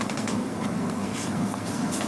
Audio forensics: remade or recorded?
remade